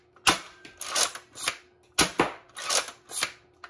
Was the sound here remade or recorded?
recorded